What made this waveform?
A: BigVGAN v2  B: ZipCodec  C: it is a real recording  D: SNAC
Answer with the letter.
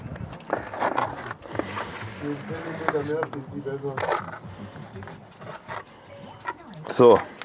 C